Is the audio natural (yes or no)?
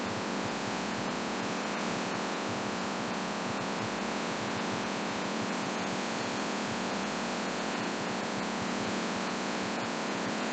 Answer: no